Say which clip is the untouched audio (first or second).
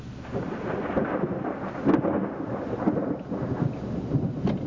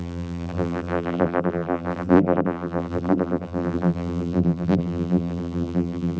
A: first